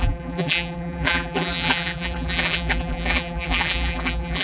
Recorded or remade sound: remade